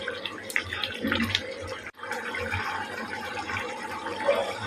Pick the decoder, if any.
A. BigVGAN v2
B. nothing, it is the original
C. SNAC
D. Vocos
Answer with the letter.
A